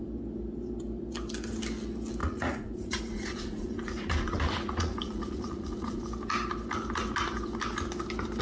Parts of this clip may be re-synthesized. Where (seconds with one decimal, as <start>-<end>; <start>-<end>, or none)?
2.2-6.0